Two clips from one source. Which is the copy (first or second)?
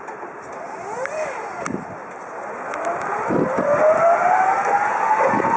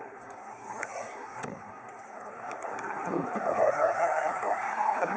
second